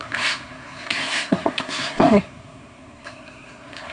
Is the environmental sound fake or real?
fake